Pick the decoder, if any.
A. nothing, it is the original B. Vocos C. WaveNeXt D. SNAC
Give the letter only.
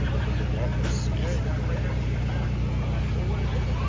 A